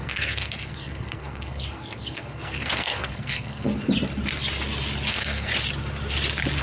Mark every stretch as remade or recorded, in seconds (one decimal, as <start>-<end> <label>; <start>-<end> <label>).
0.0-3.7 remade; 3.7-5.1 recorded; 5.1-5.5 remade; 5.5-6.6 recorded